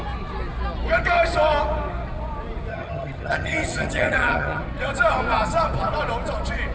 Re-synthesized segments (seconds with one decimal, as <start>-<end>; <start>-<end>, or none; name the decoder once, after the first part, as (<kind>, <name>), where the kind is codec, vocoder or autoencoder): 2.7-4.6 (vocoder, HiFi-GAN)